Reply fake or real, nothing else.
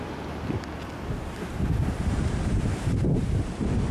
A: fake